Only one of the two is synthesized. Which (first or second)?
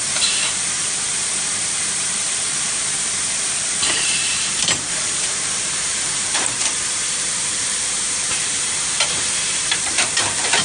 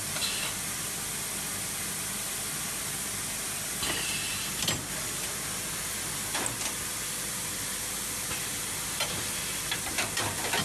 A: first